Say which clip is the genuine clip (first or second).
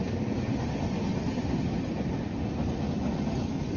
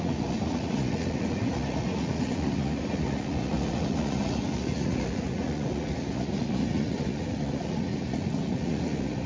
first